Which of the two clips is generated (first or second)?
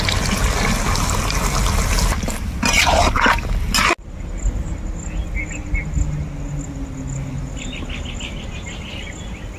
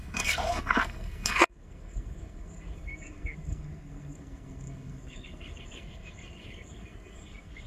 second